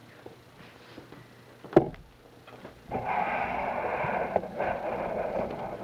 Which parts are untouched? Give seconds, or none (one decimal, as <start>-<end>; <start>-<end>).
0.0-5.8